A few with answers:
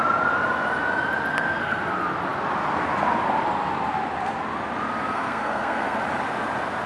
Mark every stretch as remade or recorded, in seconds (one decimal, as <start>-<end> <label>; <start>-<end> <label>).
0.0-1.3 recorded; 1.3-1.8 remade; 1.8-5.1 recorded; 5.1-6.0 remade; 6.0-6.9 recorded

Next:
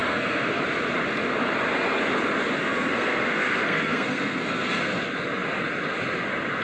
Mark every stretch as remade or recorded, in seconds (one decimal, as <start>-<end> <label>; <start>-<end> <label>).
0.0-0.6 remade; 0.6-2.6 recorded; 2.6-5.0 remade; 5.0-6.6 recorded

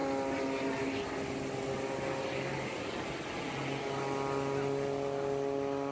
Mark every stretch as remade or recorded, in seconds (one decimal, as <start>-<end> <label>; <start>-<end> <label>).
0.0-5.9 recorded

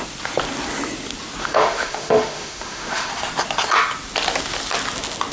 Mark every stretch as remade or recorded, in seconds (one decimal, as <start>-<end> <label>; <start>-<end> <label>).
0.0-1.4 recorded; 1.4-3.1 remade; 3.1-5.3 recorded